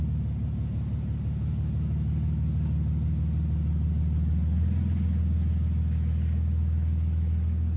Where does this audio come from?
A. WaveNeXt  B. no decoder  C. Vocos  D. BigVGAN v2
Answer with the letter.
B